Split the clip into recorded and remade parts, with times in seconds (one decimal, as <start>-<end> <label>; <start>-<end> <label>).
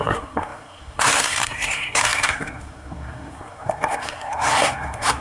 0.0-5.2 remade